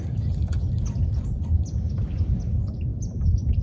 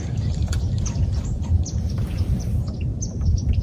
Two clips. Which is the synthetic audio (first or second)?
second